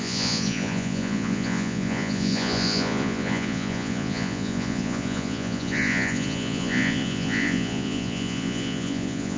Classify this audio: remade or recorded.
remade